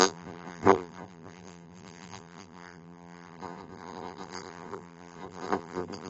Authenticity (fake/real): fake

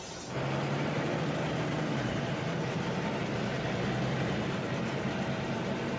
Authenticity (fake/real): fake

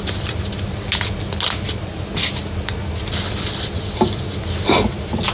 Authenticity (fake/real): real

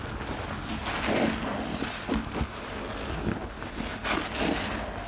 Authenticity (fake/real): real